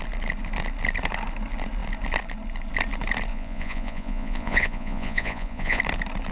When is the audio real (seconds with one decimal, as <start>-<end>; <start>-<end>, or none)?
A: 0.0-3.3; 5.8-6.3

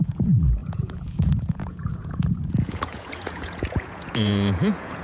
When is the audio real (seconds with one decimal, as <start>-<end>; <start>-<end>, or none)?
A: none

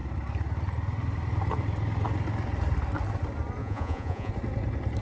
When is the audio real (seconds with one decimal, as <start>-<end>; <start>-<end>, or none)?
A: 0.0-3.6; 4.3-5.0

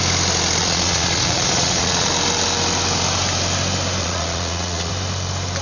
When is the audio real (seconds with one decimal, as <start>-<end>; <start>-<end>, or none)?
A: 0.0-0.6; 2.1-4.0; 4.9-5.6

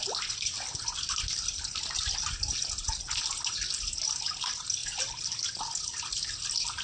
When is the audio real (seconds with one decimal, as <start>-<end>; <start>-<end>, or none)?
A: 0.0-6.8